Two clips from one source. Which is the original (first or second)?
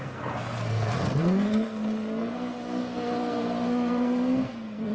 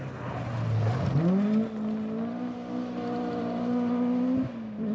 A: second